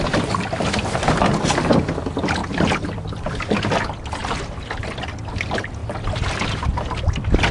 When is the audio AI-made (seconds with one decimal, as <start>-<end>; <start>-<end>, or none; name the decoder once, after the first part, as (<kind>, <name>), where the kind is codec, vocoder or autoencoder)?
4.2-5.2 (vocoder, BigVGAN v2); 5.8-6.6